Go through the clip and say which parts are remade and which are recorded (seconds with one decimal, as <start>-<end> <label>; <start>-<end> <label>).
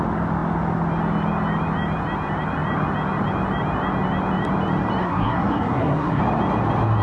0.0-5.0 recorded; 5.0-6.2 remade; 6.2-7.0 recorded